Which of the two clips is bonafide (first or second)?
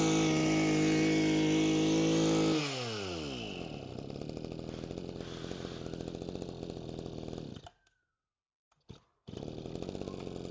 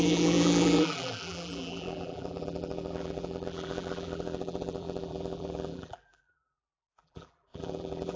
first